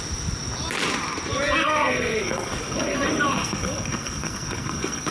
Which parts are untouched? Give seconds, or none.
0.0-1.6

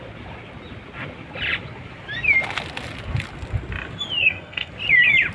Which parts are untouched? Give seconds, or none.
0.0-4.2; 4.7-5.3